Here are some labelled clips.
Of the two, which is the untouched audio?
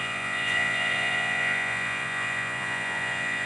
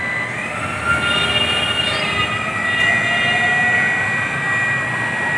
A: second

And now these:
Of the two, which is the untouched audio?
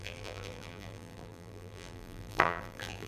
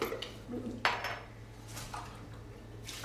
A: second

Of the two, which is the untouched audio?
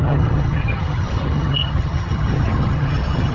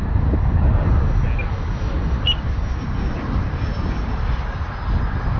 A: second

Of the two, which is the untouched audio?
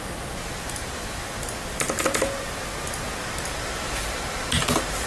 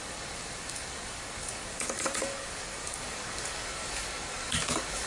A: first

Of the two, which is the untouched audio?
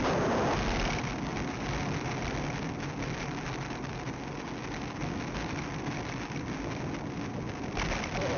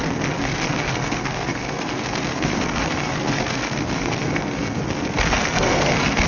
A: first